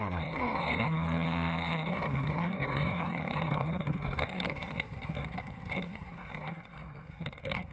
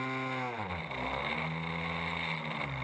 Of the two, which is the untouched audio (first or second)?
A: second